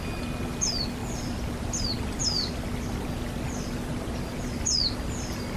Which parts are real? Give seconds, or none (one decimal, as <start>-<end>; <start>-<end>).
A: 0.0-5.6